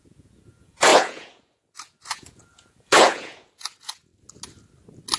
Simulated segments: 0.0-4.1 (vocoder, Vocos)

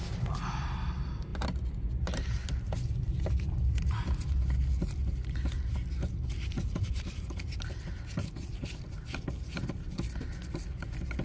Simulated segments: none

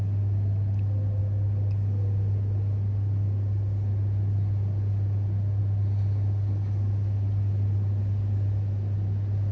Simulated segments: none

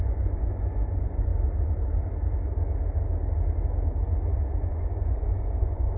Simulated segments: 0.0-1.3 (vocoder, Vocos); 4.7-6.0